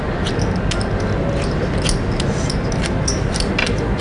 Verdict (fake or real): real